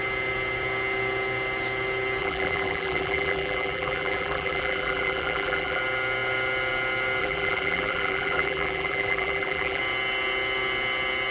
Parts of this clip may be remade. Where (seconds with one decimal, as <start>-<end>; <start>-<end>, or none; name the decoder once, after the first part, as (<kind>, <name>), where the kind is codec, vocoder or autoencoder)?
2.2-5.8 (vocoder, BigVGAN v2); 7.2-9.8

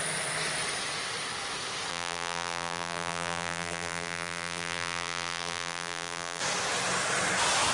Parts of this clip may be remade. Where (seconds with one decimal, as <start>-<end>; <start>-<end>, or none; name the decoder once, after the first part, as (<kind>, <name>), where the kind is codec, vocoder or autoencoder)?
1.9-6.4 (vocoder, BigVGAN v2)

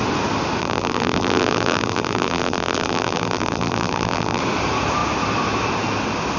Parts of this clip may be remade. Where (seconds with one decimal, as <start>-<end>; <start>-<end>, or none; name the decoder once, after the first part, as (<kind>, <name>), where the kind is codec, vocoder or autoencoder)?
0.6-4.4 (vocoder, BigVGAN v2)

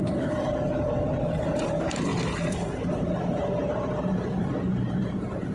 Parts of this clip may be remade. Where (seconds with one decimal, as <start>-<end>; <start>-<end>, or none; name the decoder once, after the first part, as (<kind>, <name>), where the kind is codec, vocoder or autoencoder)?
0.0-2.1 (vocoder, BigVGAN v2); 2.7-5.5

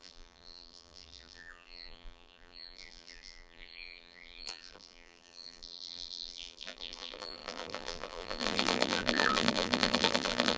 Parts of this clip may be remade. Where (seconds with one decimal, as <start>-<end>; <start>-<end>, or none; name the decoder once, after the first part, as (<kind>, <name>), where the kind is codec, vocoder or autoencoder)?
0.0-10.6 (vocoder, BigVGAN v2)